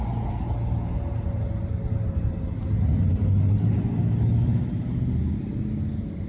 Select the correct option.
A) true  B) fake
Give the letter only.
A